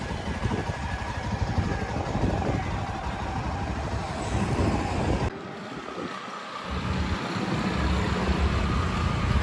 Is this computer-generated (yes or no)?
no